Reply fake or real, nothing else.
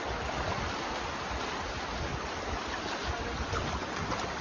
real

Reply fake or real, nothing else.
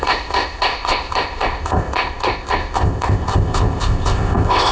fake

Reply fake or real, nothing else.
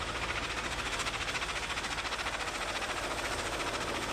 real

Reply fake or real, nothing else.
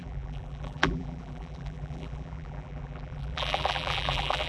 fake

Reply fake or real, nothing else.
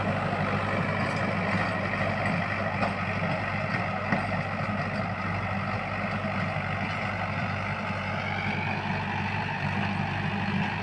real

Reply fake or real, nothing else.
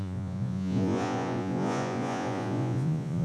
fake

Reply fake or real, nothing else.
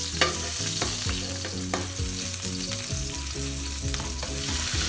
real